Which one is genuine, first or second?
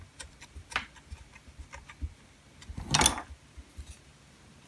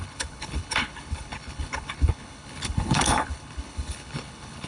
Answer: first